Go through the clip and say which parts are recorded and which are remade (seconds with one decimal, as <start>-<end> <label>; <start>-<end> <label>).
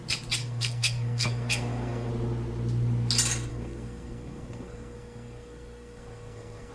0.0-0.4 recorded; 0.4-2.1 remade; 2.1-3.5 recorded; 3.5-6.7 remade